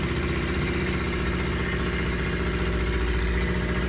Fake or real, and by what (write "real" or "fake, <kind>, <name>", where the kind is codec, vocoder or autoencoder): real